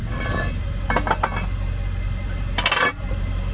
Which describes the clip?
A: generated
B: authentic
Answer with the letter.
B